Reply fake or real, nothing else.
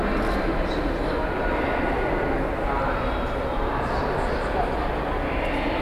real